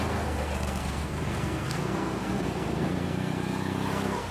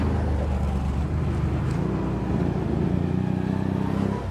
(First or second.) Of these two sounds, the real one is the second